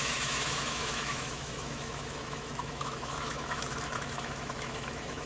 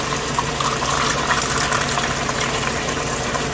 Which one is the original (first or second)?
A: second